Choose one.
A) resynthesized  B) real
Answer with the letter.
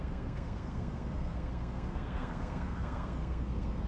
A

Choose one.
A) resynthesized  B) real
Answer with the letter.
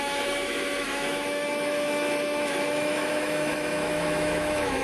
A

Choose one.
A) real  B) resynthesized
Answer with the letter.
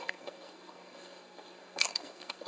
B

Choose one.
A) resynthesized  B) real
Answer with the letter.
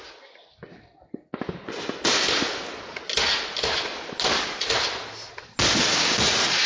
B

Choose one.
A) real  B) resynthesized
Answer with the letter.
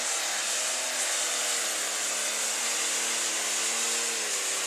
A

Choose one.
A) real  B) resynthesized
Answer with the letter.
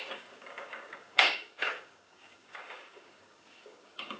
B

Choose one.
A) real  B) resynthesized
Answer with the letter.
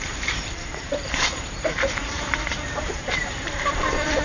B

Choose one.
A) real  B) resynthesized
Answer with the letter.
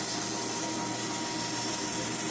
A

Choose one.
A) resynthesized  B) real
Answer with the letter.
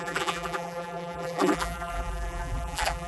A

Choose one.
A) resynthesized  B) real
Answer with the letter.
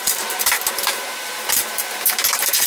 A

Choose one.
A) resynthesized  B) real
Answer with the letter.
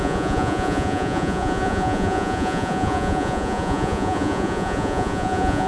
A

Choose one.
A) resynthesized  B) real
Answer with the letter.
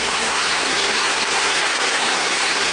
A